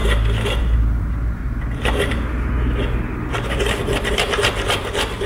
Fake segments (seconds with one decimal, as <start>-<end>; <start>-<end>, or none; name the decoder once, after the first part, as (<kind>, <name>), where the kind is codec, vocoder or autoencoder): 0.6-1.4 (vocoder, BigVGAN v2); 4.1-5.3